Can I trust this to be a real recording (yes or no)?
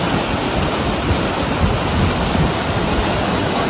yes